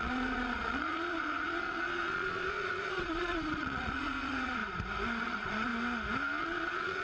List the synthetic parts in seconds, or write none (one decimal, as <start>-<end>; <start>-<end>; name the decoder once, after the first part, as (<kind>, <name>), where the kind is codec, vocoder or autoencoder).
0.0-4.6 (vocoder, Vocos); 5.2-5.7; 6.4-7.0